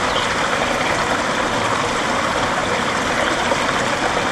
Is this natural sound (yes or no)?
yes